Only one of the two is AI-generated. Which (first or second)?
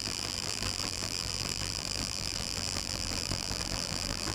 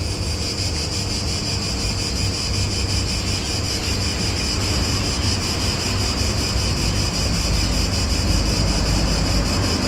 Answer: first